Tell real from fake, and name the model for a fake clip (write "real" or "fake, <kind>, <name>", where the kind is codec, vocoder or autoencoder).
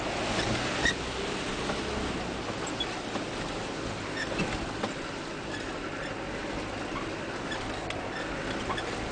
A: real